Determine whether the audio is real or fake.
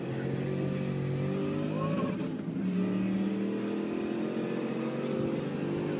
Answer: real